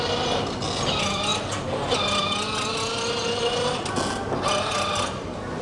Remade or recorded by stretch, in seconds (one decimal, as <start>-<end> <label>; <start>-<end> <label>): 0.0-5.6 recorded